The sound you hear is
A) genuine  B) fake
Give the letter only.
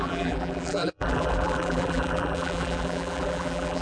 B